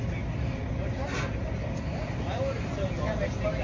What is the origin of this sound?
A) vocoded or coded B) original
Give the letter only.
B